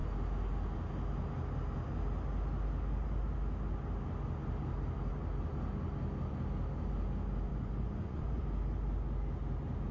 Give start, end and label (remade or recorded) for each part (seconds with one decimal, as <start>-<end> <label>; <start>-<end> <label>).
0.0-7.5 recorded; 7.5-8.4 remade; 8.4-9.9 recorded